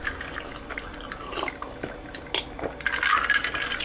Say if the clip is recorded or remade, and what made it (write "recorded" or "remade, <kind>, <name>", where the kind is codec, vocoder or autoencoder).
recorded